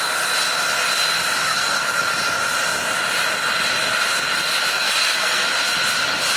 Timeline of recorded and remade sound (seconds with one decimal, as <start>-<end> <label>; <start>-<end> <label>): 0.0-1.4 recorded; 1.4-2.0 remade; 2.0-4.7 recorded; 4.7-5.5 remade; 5.5-6.4 recorded